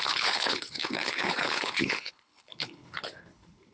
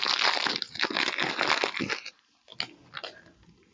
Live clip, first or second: second